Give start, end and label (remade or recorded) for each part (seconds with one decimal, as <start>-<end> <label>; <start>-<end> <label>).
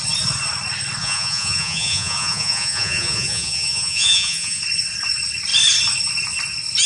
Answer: 0.0-1.0 recorded; 1.0-4.6 remade; 4.6-6.9 recorded